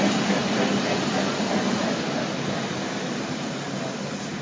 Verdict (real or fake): real